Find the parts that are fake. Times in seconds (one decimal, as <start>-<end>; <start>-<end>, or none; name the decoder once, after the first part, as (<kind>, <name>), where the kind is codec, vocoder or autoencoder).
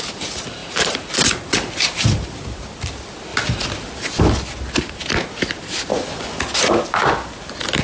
5.9-6.4 (vocoder, Vocos)